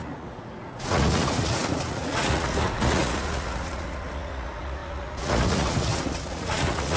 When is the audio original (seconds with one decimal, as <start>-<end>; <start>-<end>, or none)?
none